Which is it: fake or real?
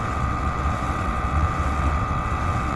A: fake